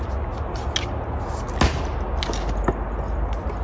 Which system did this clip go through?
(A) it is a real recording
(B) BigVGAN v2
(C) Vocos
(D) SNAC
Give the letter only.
A